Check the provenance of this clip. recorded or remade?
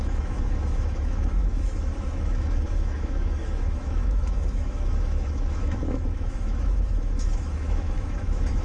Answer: remade